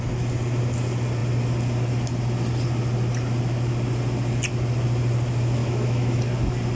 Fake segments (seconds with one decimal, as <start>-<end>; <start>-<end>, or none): 5.6-6.2